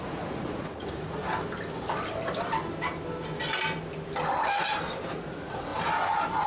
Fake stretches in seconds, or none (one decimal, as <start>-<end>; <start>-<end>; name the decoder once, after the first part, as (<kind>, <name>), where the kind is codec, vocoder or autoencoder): 0.0-1.2 (vocoder, Vocos); 5.1-5.7